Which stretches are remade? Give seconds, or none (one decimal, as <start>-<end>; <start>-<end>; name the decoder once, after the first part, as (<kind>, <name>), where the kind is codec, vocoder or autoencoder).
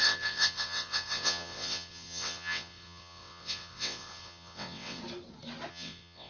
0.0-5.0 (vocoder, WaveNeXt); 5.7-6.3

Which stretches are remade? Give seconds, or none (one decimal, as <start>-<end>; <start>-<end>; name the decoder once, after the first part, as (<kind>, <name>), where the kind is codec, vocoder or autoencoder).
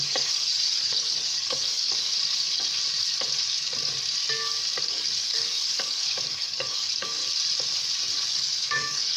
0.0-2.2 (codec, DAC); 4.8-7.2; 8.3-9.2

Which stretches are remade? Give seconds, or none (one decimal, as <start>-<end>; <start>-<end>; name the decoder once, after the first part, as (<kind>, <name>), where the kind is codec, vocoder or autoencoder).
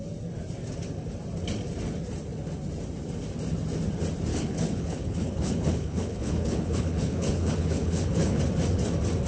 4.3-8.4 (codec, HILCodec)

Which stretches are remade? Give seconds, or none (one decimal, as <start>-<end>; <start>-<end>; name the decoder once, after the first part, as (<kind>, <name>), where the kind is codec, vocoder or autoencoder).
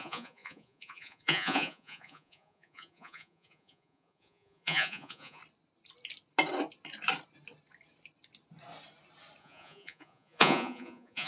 0.0-5.4 (vocoder, Vocos); 9.4-11.3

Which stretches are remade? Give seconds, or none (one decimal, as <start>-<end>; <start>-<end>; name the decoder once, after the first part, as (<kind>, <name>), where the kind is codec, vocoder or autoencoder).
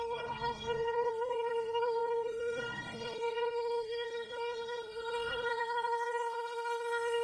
0.0-7.2 (codec, SNAC)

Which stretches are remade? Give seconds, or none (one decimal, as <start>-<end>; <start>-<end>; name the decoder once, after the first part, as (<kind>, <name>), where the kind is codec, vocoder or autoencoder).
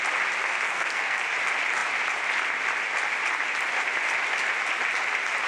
0.4-1.2 (codec, SNAC)